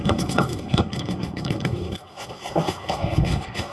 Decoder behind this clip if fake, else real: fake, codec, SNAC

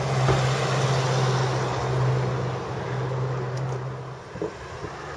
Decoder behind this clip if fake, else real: real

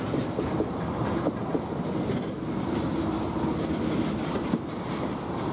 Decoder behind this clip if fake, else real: real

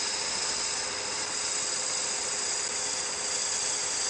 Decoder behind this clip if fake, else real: real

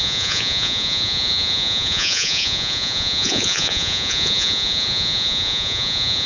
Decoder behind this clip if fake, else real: fake, vocoder, Vocos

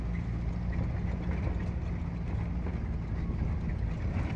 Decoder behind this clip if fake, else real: real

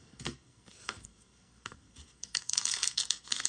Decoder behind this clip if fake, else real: fake, codec, SNAC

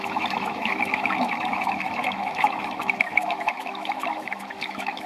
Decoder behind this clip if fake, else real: fake, autoencoder, DAC-VAE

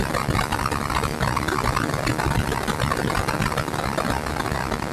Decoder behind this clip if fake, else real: real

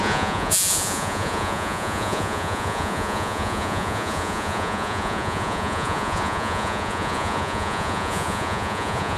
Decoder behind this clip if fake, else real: fake, vocoder, Vocos